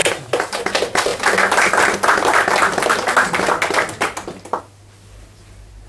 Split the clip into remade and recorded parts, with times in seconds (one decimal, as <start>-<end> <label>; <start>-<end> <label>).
0.0-0.6 remade; 0.6-5.9 recorded